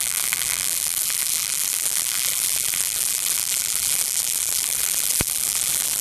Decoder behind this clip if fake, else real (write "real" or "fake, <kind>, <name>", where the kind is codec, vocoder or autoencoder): fake, vocoder, BigVGAN v2